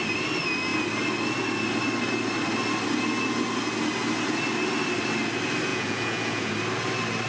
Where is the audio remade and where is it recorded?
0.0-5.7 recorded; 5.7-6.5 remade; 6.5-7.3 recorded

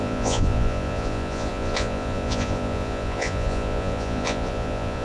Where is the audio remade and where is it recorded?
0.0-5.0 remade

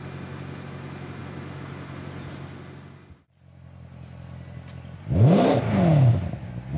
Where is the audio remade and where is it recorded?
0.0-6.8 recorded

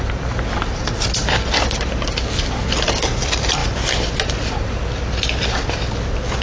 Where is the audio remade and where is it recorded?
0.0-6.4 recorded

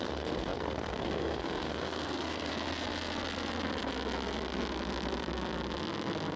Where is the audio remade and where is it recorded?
0.0-2.5 remade; 2.5-6.4 recorded